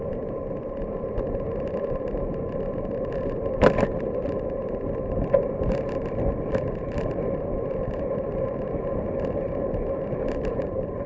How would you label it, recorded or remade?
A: recorded